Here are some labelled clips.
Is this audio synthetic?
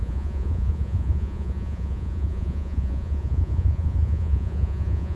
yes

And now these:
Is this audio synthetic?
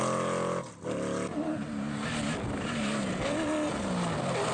no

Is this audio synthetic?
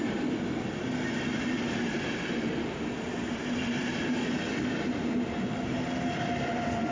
no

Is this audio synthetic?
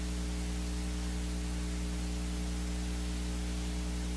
no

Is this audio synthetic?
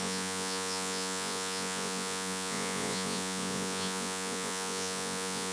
yes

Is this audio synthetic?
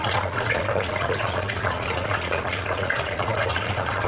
yes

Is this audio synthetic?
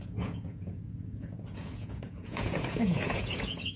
yes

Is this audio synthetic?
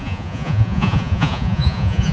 yes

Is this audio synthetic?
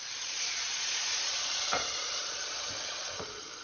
yes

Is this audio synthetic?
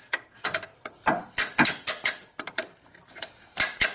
no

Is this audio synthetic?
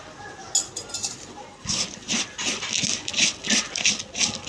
no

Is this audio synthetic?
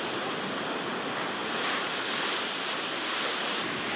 no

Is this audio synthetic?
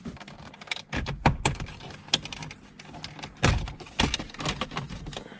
no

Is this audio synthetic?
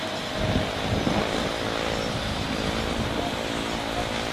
no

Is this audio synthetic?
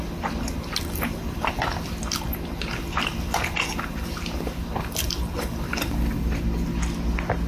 no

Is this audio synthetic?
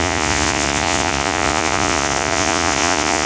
yes